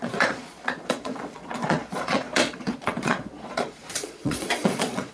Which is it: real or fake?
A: fake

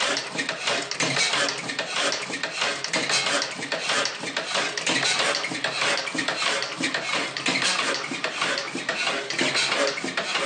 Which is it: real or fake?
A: real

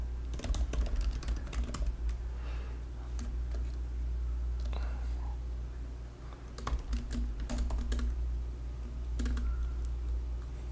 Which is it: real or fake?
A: real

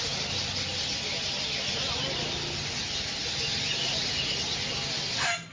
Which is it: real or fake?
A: real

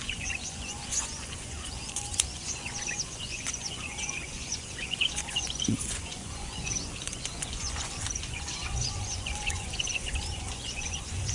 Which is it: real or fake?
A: fake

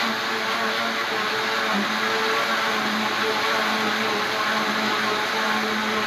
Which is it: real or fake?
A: real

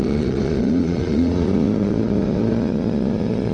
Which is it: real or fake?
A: fake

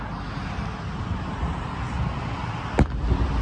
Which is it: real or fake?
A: real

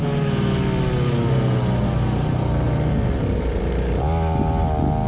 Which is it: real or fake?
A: real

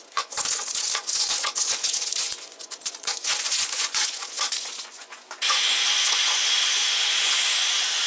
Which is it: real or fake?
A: fake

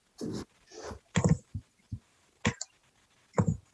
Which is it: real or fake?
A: real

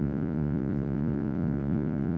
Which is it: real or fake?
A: fake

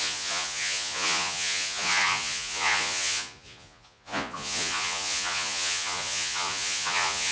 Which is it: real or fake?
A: fake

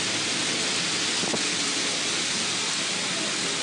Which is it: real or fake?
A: real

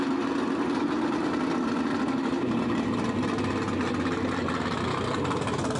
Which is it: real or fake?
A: real